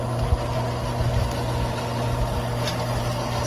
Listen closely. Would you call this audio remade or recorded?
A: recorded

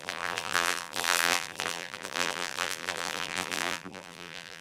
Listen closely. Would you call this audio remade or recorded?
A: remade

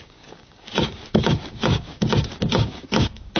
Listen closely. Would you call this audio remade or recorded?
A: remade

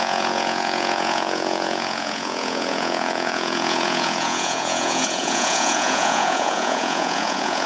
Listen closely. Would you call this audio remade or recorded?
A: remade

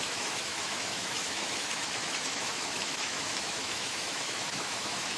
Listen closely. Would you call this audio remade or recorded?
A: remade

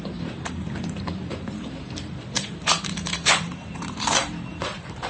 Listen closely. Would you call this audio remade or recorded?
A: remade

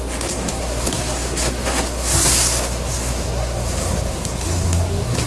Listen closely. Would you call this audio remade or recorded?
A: remade